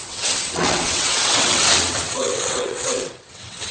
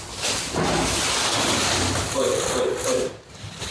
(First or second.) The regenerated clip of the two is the first